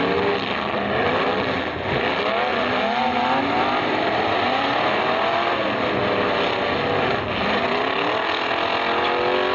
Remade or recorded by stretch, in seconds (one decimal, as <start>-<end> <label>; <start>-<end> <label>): 0.0-9.5 recorded